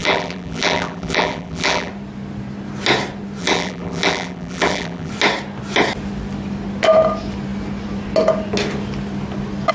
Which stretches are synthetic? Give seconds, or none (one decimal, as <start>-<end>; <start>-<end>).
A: 0.0-1.9; 3.4-5.1